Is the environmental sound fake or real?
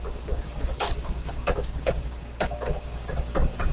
fake